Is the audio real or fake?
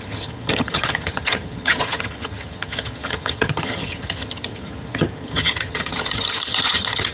fake